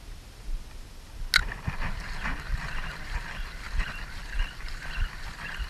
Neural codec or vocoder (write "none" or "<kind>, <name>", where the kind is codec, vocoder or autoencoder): none